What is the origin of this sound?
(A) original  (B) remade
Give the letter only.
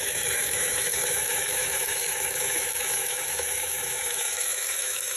B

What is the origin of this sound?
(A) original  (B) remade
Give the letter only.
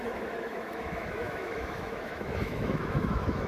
B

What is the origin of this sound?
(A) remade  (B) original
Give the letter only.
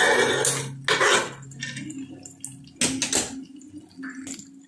B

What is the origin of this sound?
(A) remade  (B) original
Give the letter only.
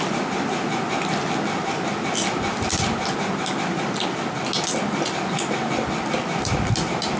B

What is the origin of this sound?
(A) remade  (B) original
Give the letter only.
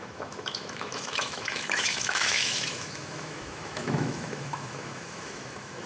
A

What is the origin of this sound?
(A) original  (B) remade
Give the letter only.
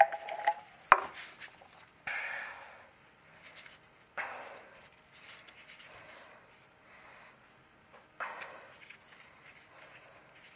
A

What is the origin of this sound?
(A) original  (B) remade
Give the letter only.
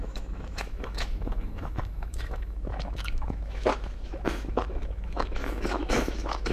B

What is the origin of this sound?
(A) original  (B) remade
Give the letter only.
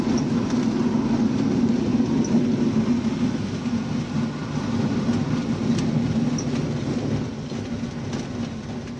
A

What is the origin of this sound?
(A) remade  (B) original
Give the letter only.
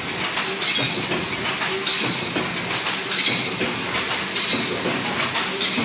B